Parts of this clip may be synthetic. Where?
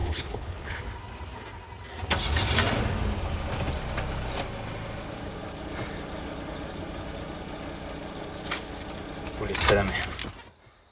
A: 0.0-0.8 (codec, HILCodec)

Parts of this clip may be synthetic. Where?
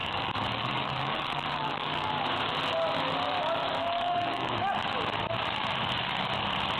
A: 0.0-2.1 (codec, DAC); 3.6-4.8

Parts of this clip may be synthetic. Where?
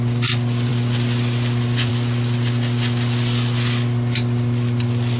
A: none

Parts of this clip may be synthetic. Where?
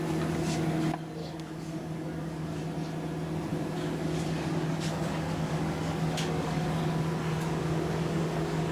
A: 1.2-2.6 (codec, DAC); 3.5-8.7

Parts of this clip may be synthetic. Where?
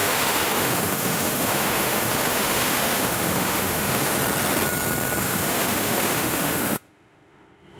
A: 0.0-4.2 (autoencoder, DAC-VAE); 5.2-7.8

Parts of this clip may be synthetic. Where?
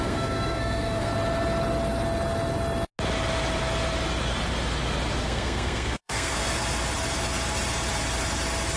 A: 0.0-1.1 (codec, SNAC); 5.2-6.4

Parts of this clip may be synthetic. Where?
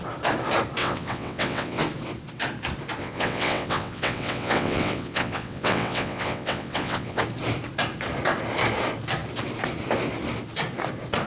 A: 0.8-1.8 (vocoder, WaveNeXt); 3.0-7.2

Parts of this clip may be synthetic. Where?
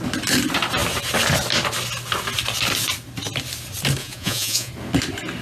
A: 4.0-4.7 (vocoder, Vocos)